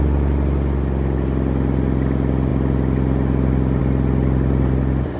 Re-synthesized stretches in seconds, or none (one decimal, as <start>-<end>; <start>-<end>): none